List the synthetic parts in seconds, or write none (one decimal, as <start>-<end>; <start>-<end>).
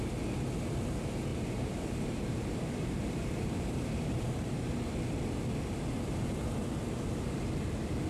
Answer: 1.3-4.7